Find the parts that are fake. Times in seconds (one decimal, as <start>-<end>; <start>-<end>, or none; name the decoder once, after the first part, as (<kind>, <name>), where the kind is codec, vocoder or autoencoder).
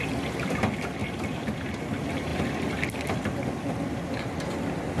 1.0-1.7 (vocoder, BigVGAN v2); 2.3-3.1